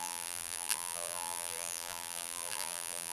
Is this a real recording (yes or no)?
no